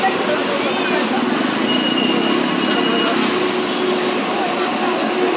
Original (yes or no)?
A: yes